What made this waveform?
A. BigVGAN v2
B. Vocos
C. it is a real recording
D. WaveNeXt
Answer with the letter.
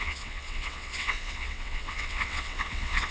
D